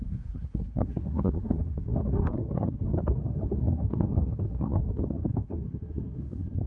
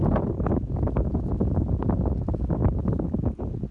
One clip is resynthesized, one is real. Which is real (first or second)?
second